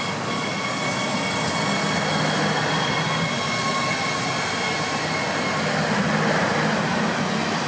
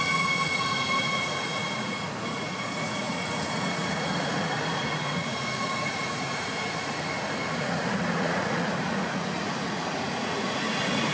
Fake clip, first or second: second